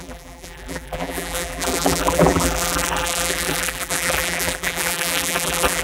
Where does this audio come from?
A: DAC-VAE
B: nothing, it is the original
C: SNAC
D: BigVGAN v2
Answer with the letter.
D